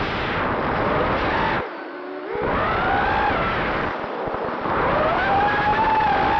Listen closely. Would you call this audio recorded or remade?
recorded